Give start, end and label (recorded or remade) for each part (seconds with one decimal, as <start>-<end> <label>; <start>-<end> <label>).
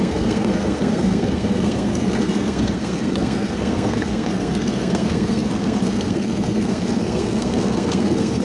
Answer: 0.0-8.4 remade